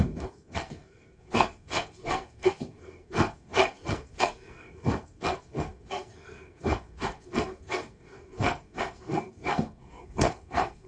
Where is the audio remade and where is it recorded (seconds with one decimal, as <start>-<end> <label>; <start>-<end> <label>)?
0.0-10.9 remade